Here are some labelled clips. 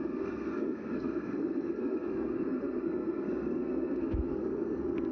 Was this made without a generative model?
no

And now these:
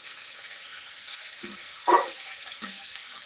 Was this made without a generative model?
no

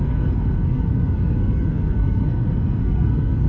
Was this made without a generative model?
no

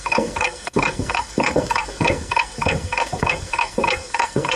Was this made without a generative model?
no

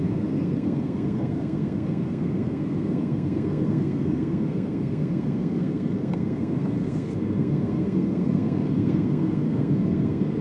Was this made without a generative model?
no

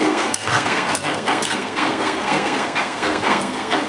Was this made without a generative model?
no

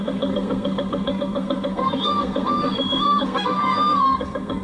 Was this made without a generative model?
no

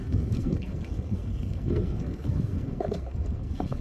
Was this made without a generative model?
no